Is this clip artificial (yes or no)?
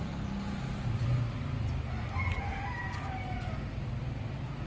no